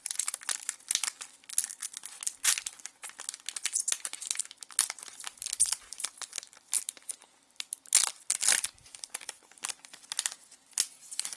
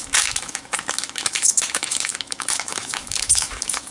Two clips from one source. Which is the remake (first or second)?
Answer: second